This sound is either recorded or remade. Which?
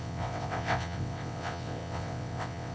remade